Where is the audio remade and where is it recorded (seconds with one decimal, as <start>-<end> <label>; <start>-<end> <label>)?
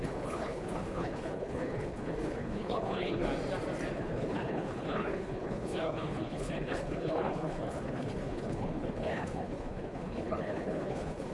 0.0-3.2 remade; 3.2-3.9 recorded; 3.9-11.3 remade